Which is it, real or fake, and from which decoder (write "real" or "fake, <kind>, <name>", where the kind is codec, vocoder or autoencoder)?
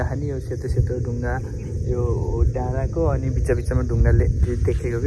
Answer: real